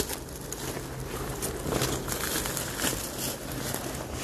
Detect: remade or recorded recorded